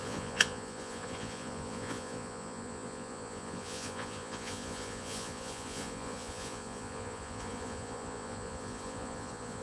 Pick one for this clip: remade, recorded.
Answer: remade